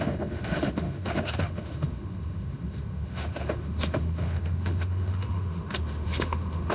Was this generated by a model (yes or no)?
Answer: yes